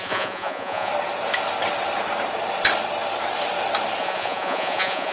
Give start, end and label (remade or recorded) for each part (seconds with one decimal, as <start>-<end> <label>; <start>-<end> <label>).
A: 0.0-0.9 remade; 0.9-4.0 recorded; 4.0-5.1 remade